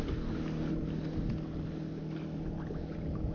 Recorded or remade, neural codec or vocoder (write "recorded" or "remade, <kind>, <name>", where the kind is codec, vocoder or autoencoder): recorded